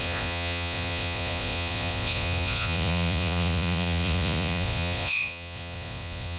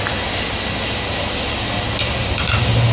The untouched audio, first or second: second